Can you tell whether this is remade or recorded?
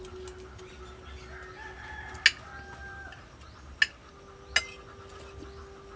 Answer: recorded